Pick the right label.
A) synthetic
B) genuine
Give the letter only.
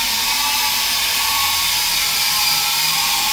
A